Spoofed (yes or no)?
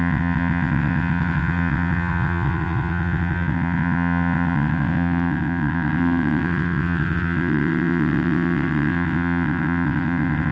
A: yes